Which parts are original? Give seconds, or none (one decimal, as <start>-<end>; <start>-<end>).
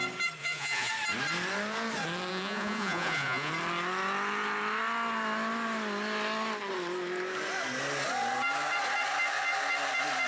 0.0-0.4; 0.9-2.3; 3.5-10.3